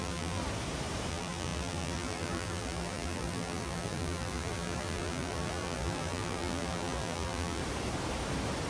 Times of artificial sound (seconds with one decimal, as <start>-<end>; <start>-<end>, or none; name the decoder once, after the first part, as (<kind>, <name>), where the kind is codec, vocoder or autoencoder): 0.0-0.4 (vocoder, BigVGAN v2); 1.1-7.6